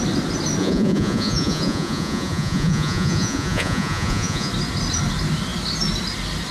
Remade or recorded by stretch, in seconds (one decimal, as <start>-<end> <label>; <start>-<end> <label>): 0.0-0.6 recorded; 0.6-4.5 remade; 4.5-6.5 recorded